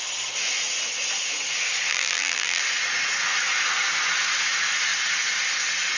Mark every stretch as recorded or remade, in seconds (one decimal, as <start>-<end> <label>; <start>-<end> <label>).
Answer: 0.0-1.9 recorded; 1.9-2.6 remade; 2.6-6.0 recorded